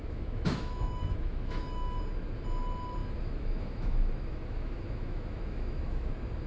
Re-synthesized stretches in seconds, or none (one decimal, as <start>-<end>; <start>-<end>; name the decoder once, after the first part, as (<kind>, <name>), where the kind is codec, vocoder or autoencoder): 0.0-2.0 (autoencoder, DAC-VAE); 3.0-6.1